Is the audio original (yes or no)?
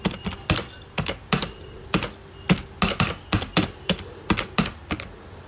yes